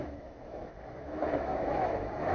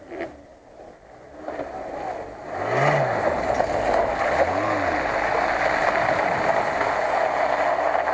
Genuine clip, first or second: second